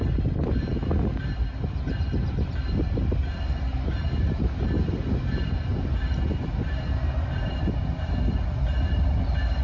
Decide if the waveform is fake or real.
real